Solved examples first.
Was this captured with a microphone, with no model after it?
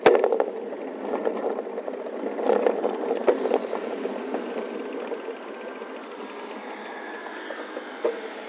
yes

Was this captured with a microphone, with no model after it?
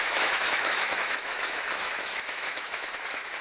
no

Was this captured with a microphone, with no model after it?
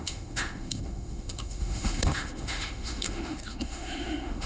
no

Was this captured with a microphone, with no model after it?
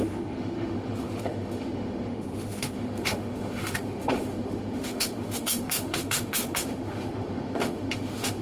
no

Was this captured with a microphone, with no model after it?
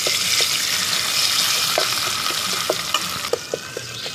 yes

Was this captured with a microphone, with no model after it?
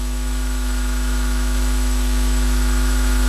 no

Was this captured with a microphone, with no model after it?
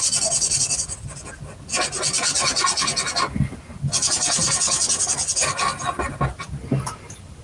yes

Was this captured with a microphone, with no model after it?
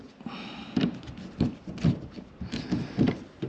yes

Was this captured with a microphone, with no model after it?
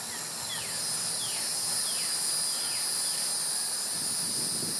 yes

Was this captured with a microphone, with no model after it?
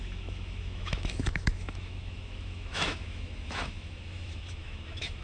no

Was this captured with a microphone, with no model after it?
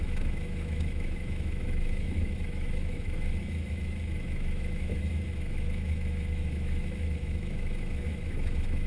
no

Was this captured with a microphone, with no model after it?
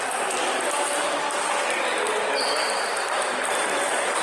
yes